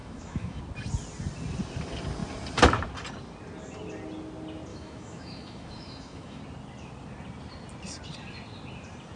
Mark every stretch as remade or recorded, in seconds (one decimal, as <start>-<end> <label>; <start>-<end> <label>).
0.0-0.6 remade; 0.6-4.7 recorded; 4.7-6.4 remade; 6.4-9.2 recorded